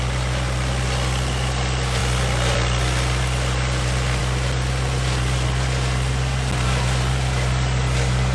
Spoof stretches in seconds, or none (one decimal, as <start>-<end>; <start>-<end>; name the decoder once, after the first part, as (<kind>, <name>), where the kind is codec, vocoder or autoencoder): none